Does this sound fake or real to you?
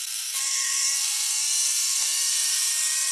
fake